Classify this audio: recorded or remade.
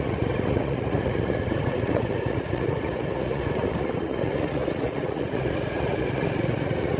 remade